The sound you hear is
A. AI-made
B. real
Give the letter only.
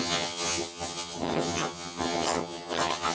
A